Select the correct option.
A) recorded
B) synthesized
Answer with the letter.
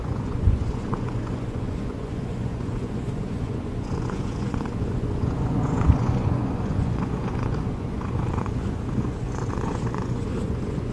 B